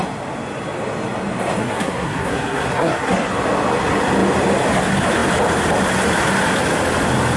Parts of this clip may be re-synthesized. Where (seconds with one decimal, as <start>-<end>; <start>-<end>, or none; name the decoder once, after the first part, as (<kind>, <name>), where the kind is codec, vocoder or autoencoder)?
1.6-3.3 (codec, SNAC)